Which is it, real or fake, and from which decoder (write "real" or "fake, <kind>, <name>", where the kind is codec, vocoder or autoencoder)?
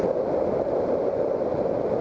real